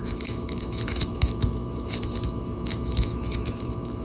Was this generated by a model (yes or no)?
yes